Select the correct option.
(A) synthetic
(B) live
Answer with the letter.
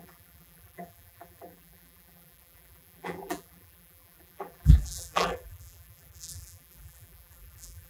A